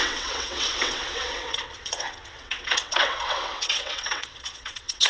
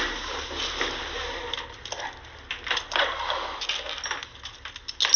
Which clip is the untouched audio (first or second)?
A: second